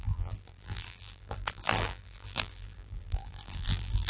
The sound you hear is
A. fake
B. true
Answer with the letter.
A